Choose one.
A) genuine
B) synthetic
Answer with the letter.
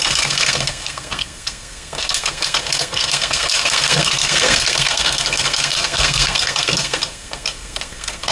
B